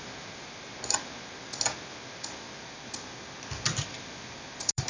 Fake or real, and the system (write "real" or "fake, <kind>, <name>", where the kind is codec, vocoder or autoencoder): real